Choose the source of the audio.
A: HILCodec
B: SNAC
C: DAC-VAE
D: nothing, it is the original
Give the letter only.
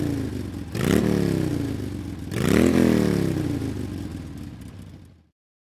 D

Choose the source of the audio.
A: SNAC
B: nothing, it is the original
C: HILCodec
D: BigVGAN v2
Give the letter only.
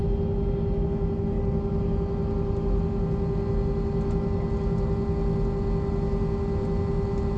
B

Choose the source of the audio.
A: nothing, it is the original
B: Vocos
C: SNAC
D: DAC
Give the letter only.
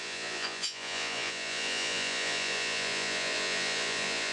B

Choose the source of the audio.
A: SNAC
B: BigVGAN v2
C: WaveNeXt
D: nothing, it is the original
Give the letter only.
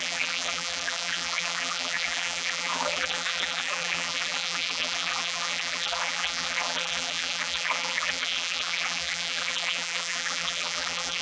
B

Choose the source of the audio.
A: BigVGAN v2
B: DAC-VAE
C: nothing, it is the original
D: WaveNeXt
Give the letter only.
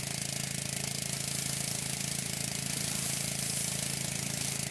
C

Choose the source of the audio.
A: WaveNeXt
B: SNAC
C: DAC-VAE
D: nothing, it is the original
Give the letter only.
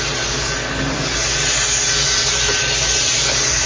D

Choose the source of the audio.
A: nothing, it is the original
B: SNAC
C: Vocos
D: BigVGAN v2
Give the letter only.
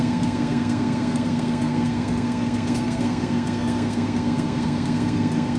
B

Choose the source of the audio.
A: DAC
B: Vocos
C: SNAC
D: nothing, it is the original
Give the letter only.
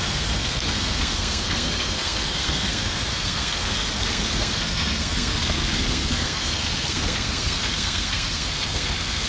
C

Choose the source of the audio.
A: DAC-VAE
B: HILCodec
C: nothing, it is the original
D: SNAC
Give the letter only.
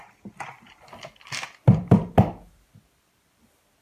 C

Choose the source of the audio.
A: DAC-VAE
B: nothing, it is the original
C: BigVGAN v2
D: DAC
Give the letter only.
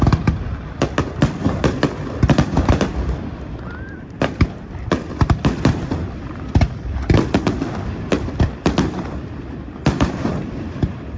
C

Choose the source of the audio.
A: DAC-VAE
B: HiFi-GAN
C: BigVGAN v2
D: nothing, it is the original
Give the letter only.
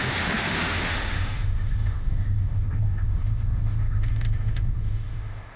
A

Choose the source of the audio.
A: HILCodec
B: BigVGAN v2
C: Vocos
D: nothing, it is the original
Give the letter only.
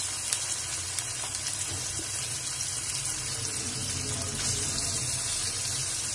D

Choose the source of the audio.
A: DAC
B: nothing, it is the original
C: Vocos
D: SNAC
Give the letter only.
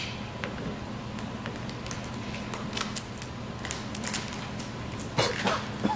B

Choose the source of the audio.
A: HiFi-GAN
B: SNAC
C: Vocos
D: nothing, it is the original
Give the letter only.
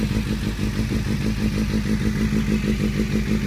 D